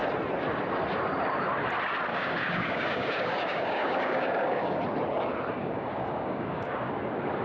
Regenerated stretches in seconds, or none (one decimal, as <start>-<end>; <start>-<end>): 2.1-4.8; 5.6-6.9